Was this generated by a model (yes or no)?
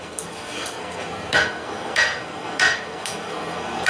yes